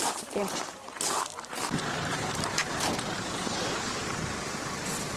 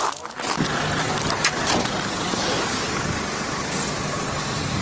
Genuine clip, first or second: second